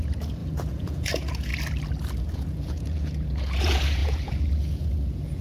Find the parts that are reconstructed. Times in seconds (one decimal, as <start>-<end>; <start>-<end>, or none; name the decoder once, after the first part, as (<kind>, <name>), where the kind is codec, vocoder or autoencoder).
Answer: 0.0-1.5 (vocoder, Vocos); 2.2-5.4